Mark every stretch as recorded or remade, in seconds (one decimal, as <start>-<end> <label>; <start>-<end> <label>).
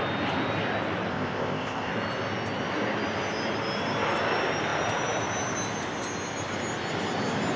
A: 0.0-1.1 recorded; 1.1-1.9 remade; 1.9-7.6 recorded